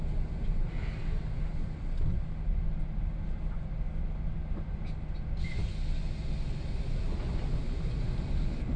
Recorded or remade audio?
recorded